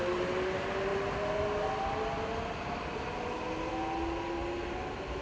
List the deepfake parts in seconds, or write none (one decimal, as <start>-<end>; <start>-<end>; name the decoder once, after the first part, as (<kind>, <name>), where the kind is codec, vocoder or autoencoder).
none